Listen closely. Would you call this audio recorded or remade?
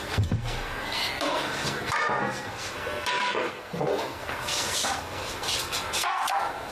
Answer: remade